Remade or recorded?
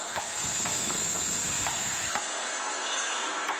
remade